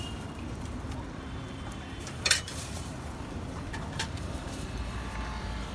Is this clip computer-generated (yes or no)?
yes